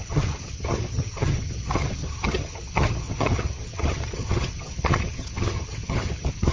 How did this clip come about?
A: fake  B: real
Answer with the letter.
A